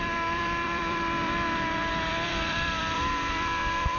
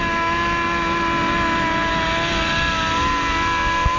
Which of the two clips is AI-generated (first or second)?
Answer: first